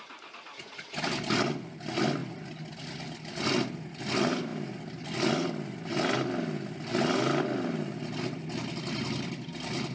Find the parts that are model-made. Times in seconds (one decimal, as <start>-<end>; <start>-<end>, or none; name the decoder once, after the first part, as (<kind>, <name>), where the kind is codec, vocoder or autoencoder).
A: none